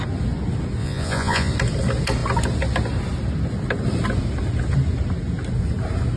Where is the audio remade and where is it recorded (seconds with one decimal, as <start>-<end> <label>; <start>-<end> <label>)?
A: 0.0-0.8 recorded; 0.8-1.5 remade; 1.5-6.2 recorded